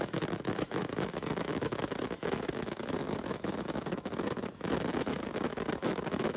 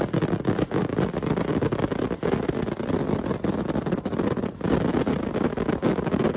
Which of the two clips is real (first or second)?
second